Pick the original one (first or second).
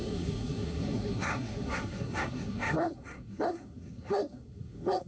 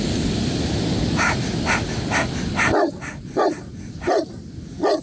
second